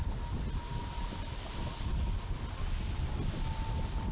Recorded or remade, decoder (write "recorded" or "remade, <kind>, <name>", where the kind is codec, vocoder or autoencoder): recorded